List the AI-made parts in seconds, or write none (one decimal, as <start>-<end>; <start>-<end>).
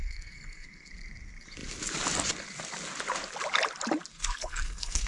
0.0-0.9; 4.1-5.1